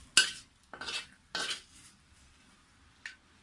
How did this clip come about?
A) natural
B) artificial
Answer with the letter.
A